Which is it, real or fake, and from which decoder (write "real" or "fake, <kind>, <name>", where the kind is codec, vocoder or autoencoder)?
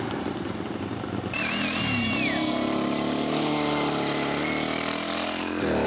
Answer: real